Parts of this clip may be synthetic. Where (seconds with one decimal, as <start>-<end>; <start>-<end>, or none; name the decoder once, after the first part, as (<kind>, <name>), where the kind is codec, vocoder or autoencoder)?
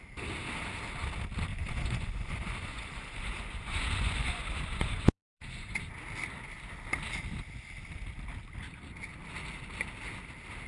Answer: 1.5-5.9 (vocoder, Vocos)